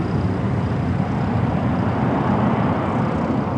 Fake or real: real